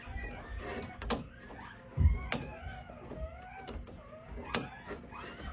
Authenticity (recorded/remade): recorded